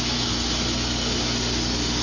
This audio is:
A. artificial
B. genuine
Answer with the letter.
B